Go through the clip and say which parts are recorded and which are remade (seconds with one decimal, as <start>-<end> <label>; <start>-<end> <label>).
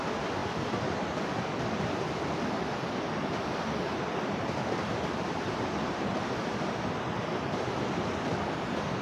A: 0.0-9.0 remade